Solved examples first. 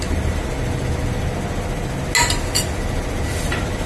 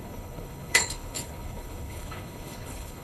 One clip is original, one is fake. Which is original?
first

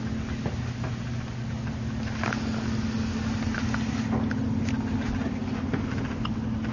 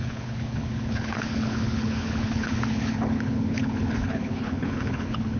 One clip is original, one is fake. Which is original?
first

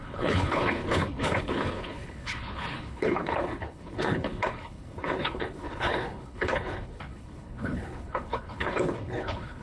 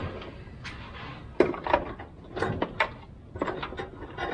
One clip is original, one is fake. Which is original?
second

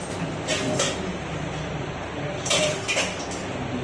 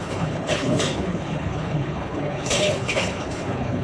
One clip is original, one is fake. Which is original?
first